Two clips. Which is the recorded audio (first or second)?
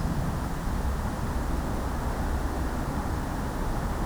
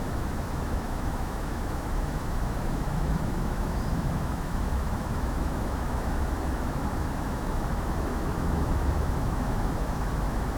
first